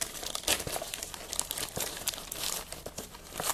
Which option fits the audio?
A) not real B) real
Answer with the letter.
B